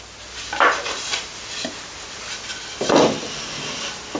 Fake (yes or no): no